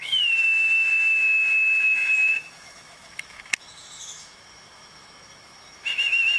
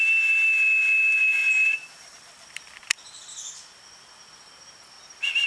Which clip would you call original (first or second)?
second